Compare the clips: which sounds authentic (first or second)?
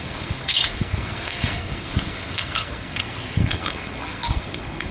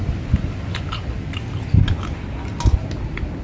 second